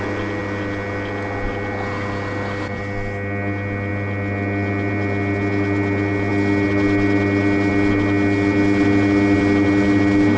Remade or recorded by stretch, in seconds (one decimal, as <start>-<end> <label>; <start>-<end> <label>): 0.0-10.4 recorded